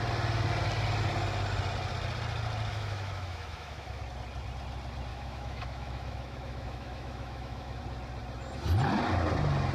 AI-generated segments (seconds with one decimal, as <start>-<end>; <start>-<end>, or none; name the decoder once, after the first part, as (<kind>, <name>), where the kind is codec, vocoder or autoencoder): 2.7-4.0 (autoencoder, DAC-VAE); 5.1-7.8